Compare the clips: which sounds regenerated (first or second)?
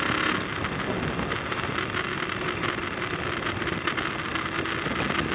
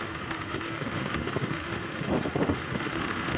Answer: second